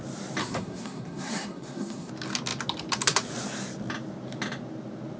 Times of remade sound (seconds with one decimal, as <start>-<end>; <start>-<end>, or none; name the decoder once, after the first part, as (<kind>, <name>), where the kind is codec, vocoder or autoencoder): 0.4-2.1 (codec, SNAC)